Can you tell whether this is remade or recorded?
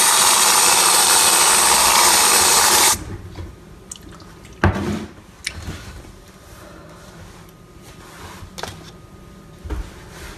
recorded